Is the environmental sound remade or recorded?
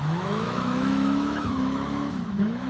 remade